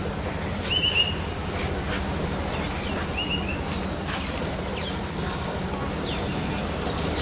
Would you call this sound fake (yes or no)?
no